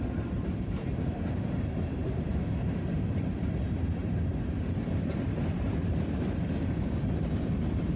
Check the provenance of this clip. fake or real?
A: fake